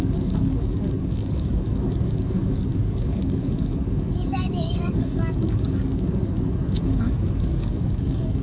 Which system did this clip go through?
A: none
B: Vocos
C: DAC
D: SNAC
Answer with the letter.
C